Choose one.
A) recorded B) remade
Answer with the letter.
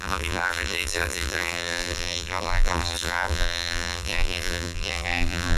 B